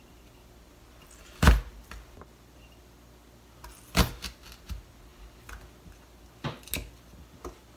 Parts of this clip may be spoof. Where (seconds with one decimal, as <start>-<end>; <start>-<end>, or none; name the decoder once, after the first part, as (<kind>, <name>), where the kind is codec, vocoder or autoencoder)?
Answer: none